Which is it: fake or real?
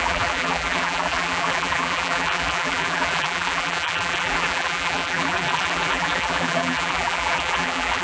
fake